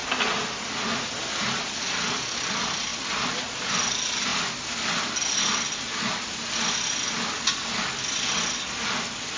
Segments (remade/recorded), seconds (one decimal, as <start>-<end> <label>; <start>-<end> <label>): 0.0-9.4 recorded

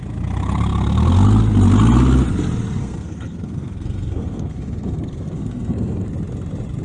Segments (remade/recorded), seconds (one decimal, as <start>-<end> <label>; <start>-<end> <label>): 0.0-2.8 recorded; 2.8-6.1 remade; 6.1-6.8 recorded

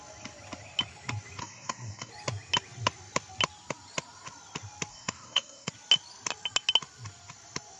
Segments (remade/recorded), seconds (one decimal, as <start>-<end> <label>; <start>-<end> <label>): 0.0-1.4 recorded; 1.4-2.1 remade; 2.1-4.9 recorded; 4.9-5.7 remade; 5.7-7.8 recorded

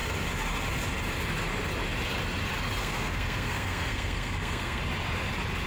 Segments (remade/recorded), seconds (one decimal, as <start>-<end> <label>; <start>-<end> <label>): 0.0-2.8 recorded; 2.8-4.8 remade; 4.8-5.7 recorded

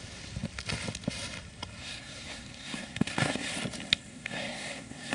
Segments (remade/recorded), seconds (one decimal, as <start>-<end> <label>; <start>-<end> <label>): 0.0-1.8 recorded; 1.8-3.5 remade; 3.5-4.1 recorded; 4.1-5.1 remade

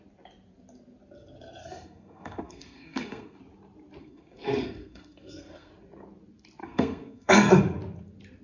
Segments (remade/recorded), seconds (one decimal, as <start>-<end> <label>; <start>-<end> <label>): 0.0-1.6 recorded; 1.6-3.4 remade; 3.4-4.0 recorded; 4.0-5.7 remade; 5.7-6.6 recorded; 6.6-7.6 remade; 7.6-8.4 recorded